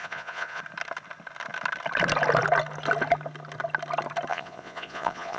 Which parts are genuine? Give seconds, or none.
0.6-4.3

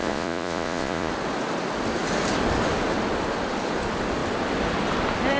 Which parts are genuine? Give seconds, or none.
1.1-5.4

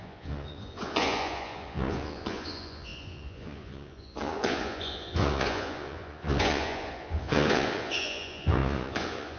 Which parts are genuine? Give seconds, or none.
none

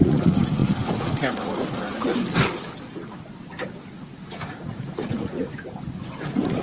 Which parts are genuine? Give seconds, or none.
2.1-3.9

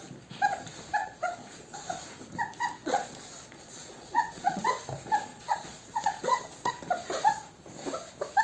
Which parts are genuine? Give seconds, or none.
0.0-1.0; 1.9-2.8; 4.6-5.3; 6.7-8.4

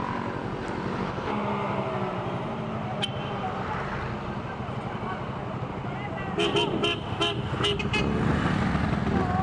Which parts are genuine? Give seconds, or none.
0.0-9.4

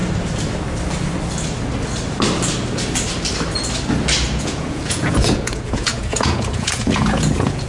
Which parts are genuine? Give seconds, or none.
0.0-4.4

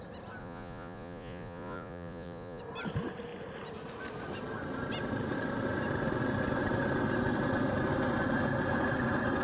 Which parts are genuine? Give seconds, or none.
0.0-0.4; 2.6-9.4